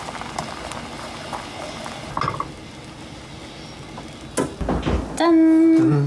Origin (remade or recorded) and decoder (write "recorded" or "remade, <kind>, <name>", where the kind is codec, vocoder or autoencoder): recorded